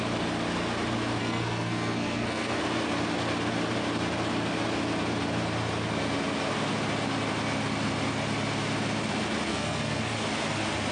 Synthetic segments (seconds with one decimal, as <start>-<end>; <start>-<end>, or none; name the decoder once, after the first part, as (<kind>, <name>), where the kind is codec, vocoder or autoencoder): 1.2-2.6 (codec, SNAC); 9.5-10.0

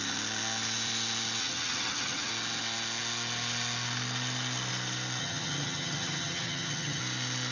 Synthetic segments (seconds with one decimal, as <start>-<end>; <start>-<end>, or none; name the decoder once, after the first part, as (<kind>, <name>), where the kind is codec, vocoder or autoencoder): 1.4-2.3 (vocoder, HiFi-GAN); 5.2-7.0

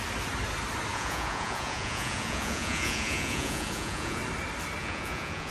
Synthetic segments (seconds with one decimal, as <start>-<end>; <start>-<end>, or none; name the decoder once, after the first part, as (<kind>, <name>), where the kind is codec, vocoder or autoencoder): 0.9-4.2 (vocoder, Vocos); 4.8-5.5

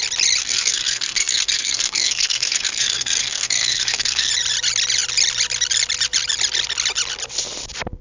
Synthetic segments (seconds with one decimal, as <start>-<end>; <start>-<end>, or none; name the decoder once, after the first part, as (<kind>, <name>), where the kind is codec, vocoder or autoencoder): 0.4-4.3 (codec, SNAC)

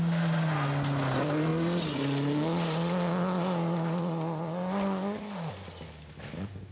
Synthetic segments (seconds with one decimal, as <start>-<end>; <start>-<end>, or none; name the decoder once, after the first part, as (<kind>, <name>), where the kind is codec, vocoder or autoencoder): none